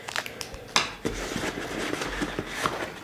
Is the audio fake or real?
real